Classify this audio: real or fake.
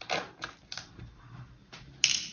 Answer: real